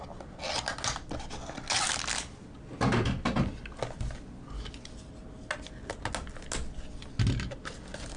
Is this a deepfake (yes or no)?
no